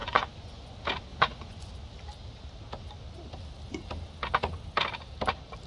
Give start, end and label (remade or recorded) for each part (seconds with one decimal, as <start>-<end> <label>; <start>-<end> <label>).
0.0-0.7 remade; 0.7-1.1 recorded; 1.1-1.7 remade; 1.7-5.7 recorded